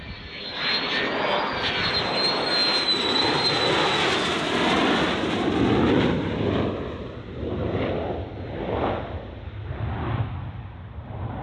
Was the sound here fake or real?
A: real